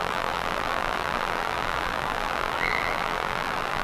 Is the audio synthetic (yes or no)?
yes